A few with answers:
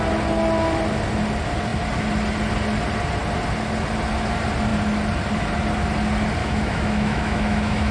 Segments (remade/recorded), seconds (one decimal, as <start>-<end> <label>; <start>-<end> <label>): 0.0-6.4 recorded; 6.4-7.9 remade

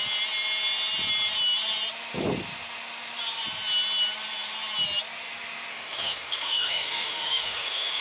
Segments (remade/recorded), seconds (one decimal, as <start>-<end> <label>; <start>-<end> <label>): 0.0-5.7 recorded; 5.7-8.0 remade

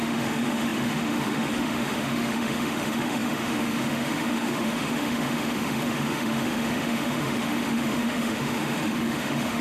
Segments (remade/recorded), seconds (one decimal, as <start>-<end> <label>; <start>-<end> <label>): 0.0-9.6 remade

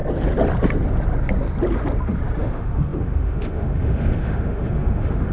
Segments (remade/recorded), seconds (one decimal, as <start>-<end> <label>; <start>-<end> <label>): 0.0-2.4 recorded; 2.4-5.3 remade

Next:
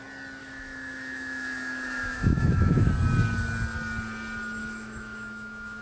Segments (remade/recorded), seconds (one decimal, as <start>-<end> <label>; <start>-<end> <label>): 0.0-0.4 recorded; 0.4-2.9 remade; 2.9-4.6 recorded; 4.6-5.8 remade